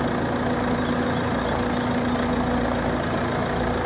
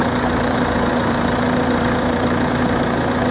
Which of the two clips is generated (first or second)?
second